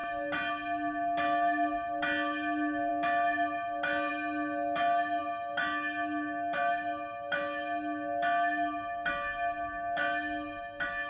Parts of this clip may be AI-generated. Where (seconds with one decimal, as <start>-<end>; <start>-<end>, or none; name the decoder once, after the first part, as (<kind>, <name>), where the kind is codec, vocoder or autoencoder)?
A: none

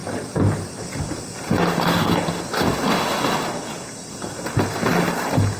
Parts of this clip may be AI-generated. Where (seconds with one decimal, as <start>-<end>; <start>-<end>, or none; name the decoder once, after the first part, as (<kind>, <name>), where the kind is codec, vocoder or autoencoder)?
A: none

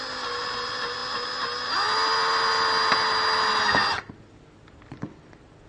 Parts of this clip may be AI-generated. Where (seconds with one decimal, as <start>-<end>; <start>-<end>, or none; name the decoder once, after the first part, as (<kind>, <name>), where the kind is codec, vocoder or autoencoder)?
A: none

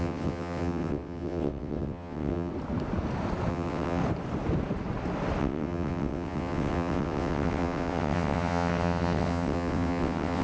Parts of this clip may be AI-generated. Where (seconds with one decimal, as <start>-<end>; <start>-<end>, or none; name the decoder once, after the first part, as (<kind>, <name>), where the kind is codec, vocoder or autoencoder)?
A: 0.0-2.5 (vocoder, WaveNeXt); 3.5-4.0; 5.4-10.4

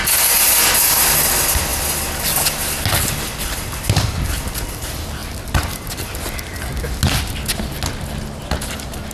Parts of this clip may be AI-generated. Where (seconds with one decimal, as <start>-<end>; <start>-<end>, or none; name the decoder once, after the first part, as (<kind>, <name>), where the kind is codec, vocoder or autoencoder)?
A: none